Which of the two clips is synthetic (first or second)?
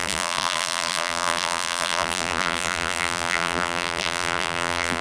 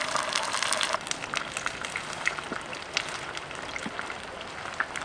first